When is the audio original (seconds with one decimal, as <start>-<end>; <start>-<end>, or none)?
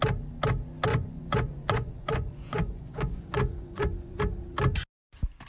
0.0-0.9; 4.2-5.5